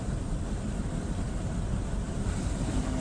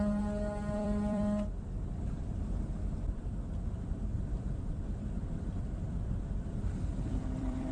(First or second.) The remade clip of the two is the second